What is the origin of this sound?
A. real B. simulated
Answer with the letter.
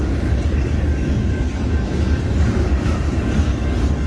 B